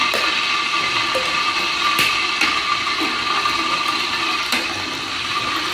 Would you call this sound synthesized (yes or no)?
yes